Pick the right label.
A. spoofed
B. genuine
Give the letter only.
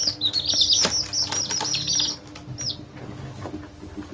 B